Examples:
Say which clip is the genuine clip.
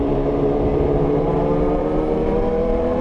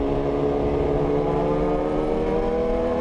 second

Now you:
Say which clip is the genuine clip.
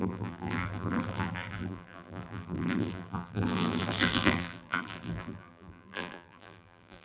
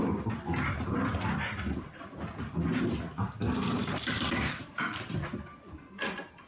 second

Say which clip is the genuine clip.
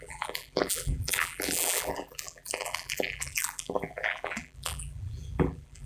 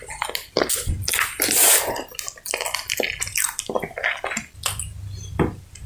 second